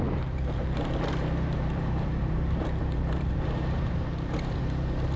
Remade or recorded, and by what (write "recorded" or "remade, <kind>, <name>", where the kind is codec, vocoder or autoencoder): remade, vocoder, BigVGAN v2